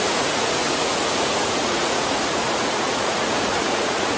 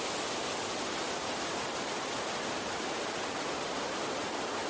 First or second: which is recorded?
second